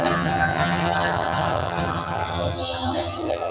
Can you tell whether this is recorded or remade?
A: remade